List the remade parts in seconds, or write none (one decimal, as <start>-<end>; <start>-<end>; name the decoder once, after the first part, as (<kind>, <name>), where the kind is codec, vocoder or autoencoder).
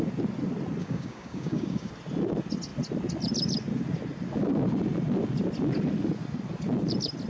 0.8-1.9 (codec, DAC)